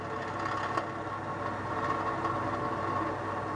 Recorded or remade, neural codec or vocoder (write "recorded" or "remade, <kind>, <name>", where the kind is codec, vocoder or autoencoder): recorded